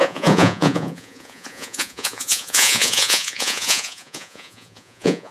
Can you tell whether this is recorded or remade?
remade